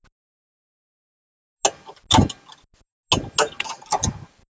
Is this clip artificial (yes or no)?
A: no